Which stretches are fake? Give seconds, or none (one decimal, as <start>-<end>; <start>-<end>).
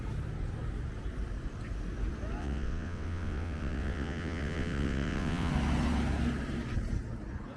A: 2.4-5.5